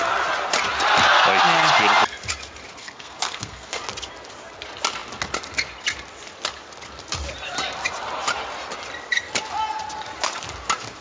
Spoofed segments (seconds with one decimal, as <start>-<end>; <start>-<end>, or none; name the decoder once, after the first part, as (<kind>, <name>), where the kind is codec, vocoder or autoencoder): 2.8-3.8 (codec, SNAC)